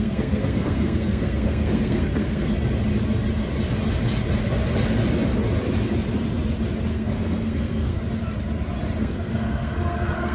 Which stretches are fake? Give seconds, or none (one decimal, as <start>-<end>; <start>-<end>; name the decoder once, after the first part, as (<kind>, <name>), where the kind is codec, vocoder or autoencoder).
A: 0.0-2.5 (codec, SNAC); 6.9-8.0; 9.0-10.3